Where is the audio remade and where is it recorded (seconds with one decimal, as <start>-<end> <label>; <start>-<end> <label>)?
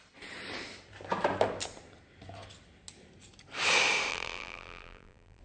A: 0.0-4.1 recorded; 4.1-5.4 remade